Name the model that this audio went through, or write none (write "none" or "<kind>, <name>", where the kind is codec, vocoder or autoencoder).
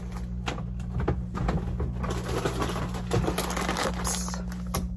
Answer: none